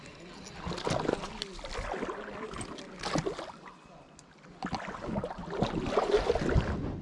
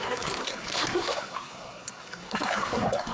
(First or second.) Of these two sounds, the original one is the first